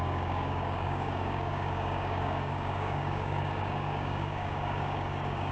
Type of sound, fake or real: fake